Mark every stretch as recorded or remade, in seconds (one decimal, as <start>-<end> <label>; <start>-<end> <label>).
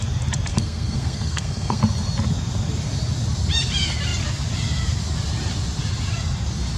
0.0-0.5 recorded; 0.5-1.8 remade; 1.8-6.8 recorded